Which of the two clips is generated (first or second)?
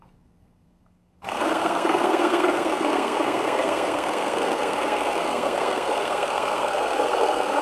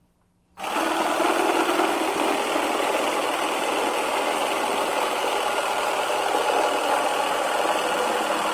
first